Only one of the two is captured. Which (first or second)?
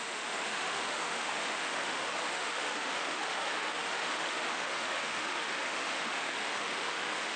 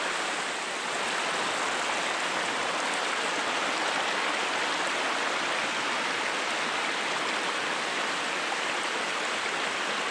second